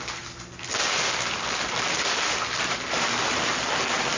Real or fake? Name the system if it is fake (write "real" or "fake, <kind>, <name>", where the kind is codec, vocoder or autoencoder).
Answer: real